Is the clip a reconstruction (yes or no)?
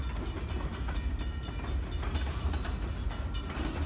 no